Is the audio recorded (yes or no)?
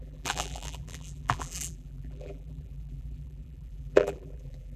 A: no